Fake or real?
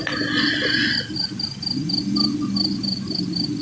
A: real